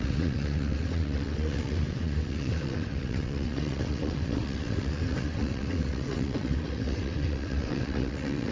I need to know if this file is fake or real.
fake